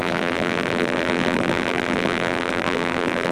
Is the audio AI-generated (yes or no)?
yes